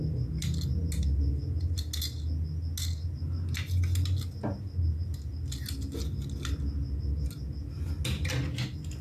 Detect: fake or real real